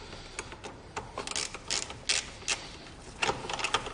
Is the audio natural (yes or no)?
yes